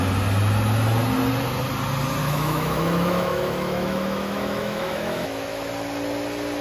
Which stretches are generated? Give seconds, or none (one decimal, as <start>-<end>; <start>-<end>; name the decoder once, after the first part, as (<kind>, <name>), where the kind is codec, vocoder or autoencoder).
2.2-5.7 (autoencoder, DAC-VAE)